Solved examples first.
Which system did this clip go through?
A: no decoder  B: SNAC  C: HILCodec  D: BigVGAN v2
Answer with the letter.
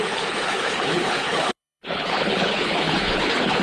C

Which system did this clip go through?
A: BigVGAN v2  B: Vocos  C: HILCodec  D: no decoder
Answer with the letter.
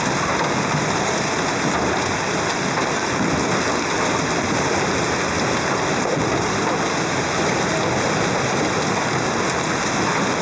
D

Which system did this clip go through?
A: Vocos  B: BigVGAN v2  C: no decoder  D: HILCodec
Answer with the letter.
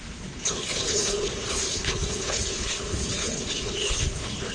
D